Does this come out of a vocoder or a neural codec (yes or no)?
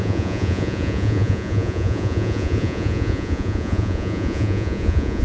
yes